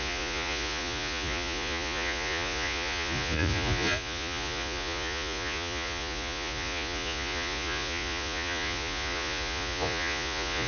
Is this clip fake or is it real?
fake